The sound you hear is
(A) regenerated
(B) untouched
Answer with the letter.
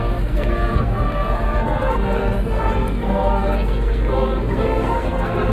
A